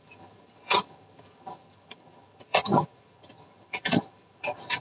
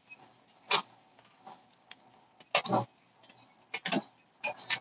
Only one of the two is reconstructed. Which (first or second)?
first